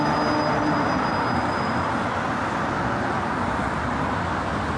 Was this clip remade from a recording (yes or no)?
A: no